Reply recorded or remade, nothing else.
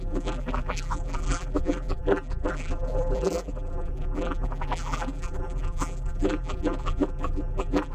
remade